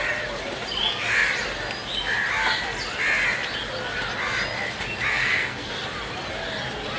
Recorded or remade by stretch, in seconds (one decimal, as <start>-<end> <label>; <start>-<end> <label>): 0.0-5.1 recorded; 5.1-5.7 remade; 5.7-7.0 recorded